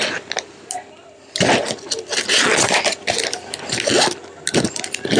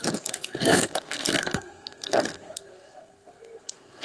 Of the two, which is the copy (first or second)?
second